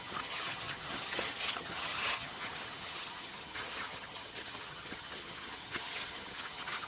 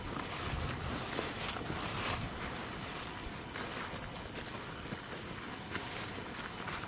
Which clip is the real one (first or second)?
second